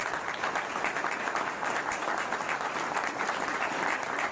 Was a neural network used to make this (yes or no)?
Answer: no